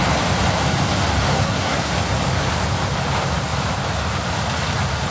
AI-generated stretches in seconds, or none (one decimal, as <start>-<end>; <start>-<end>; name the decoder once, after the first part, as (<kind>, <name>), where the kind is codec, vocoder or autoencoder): 1.3-1.9 (codec, SNAC)